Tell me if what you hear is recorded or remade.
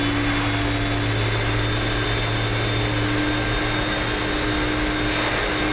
recorded